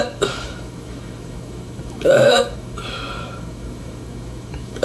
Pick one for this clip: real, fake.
fake